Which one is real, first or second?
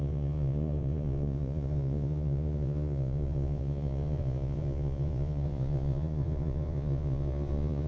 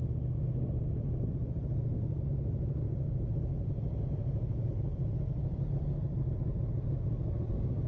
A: second